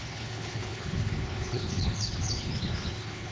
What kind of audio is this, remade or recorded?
remade